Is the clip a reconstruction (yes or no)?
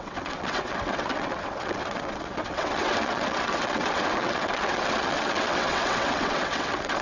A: yes